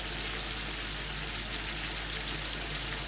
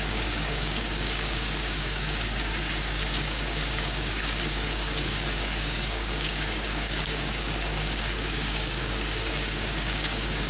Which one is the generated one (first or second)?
second